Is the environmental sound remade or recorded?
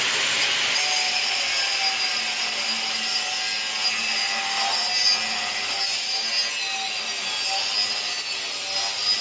recorded